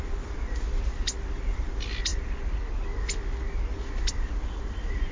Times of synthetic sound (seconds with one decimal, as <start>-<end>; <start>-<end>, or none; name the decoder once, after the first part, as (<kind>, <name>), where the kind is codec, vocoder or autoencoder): 0.0-2.1 (vocoder, BigVGAN v2); 4.1-5.1